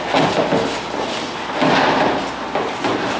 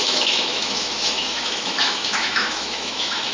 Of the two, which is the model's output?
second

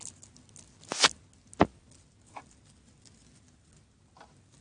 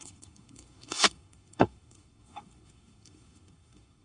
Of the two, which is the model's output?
second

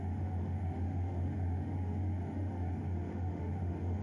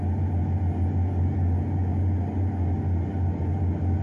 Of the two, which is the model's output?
first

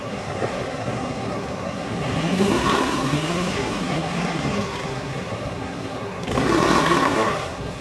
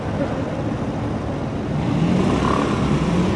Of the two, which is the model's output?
first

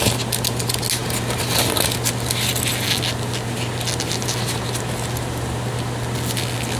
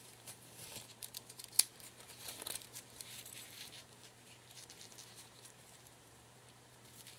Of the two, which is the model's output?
second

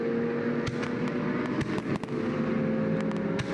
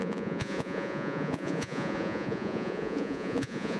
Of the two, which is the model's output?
second